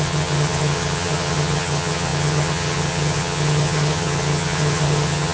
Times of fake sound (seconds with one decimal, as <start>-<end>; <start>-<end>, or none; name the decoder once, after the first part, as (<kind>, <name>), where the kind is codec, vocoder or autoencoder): 0.0-5.3 (vocoder, HiFi-GAN)